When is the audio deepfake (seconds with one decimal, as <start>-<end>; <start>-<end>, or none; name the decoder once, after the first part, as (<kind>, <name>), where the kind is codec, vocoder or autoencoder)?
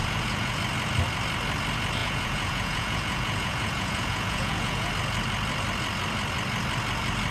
0.0-0.6 (vocoder, Vocos); 2.0-4.9